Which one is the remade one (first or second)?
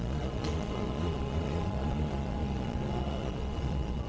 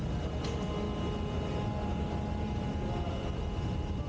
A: first